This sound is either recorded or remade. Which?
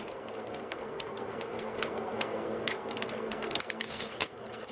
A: remade